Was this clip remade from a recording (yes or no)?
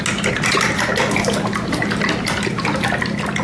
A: no